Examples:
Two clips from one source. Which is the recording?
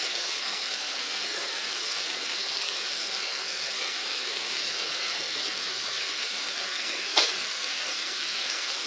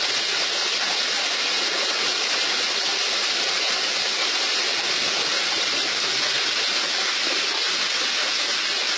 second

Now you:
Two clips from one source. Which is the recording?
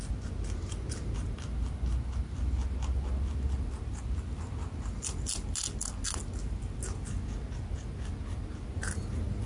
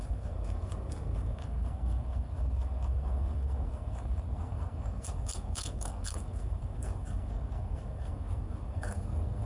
first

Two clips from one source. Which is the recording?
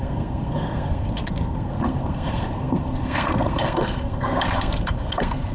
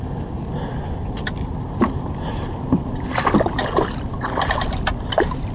second